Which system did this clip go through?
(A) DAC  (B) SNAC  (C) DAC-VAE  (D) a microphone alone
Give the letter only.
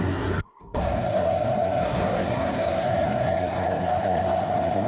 B